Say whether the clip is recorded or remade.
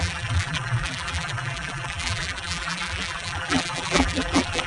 remade